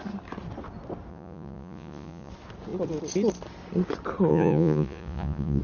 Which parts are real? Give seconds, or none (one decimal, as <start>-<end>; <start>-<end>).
0.0-1.1; 2.3-4.3